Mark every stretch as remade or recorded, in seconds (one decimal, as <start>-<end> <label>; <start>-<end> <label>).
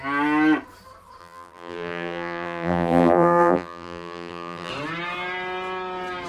0.0-1.2 recorded; 1.2-4.7 remade; 4.7-6.3 recorded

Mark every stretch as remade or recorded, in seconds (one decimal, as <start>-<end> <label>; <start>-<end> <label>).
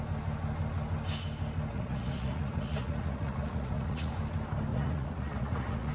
0.0-1.7 recorded; 1.7-4.1 remade; 4.1-4.7 recorded; 4.7-5.9 remade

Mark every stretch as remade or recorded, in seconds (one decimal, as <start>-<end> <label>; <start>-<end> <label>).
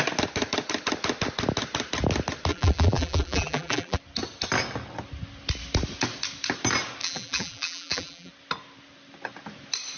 0.0-2.5 recorded; 2.5-4.0 remade; 4.0-7.0 recorded; 7.0-8.3 remade; 8.3-10.0 recorded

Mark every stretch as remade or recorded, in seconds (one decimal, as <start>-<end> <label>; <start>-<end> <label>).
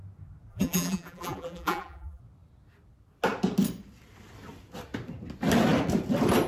0.0-0.5 recorded; 0.5-2.2 remade; 2.2-6.5 recorded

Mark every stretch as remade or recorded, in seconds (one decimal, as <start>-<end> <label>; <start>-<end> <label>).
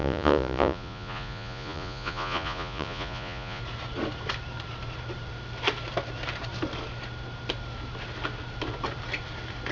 0.0-3.6 remade; 3.6-9.7 recorded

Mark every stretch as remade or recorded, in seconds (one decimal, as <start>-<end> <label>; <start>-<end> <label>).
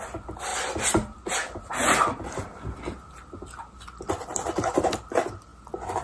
0.0-0.5 remade; 0.5-4.1 recorded; 4.1-5.5 remade; 5.5-6.0 recorded